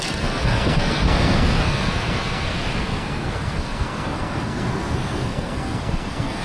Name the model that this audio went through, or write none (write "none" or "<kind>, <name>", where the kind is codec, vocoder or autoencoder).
codec, SNAC